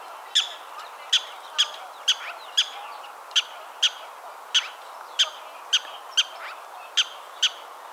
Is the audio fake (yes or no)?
no